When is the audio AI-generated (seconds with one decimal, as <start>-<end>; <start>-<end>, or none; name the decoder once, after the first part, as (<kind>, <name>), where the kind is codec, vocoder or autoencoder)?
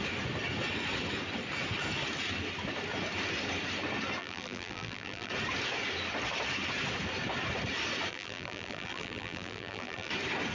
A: 4.2-5.3 (vocoder, BigVGAN v2); 8.1-10.1